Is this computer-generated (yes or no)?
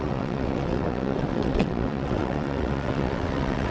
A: yes